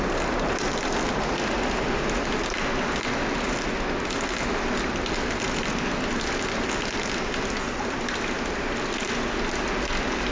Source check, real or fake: real